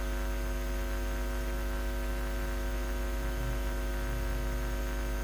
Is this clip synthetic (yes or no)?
no